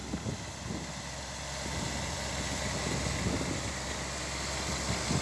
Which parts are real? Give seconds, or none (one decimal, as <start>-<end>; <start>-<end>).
0.0-5.2